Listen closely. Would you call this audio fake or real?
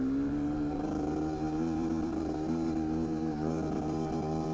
fake